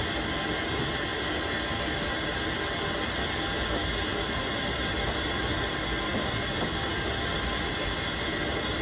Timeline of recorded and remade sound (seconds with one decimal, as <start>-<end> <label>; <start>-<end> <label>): 0.0-8.8 recorded